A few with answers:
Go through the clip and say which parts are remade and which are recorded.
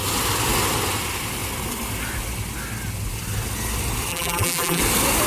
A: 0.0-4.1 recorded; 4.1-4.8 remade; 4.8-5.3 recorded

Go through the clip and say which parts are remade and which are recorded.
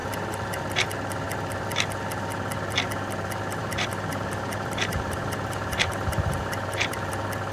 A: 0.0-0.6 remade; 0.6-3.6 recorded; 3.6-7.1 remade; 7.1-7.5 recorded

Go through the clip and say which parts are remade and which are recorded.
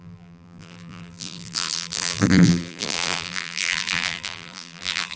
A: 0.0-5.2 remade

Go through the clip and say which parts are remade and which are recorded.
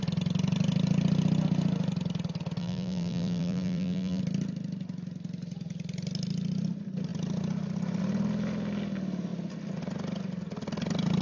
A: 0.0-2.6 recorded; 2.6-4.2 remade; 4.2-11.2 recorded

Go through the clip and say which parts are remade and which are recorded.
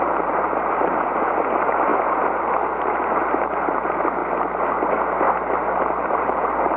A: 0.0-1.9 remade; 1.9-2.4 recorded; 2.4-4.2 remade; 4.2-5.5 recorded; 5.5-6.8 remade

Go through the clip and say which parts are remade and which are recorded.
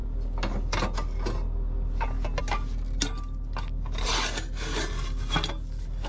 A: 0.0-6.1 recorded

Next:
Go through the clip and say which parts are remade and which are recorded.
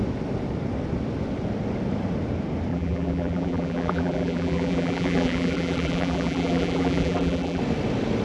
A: 0.0-2.7 recorded; 2.7-7.6 remade; 7.6-8.2 recorded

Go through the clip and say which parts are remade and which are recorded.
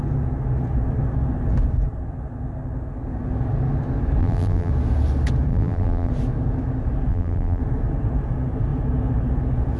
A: 0.0-4.2 recorded; 4.2-4.7 remade; 4.7-5.5 recorded; 5.5-6.1 remade; 6.1-7.1 recorded; 7.1-7.6 remade; 7.6-9.8 recorded